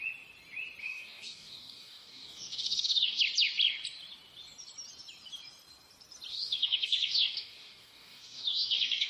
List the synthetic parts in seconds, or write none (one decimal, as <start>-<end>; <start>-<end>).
0.8-3.2; 6.3-9.1